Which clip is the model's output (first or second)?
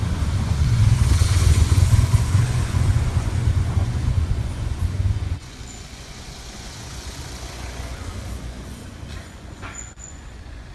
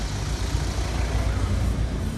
first